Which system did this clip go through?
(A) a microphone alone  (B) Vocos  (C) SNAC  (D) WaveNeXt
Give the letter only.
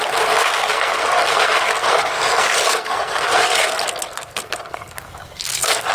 C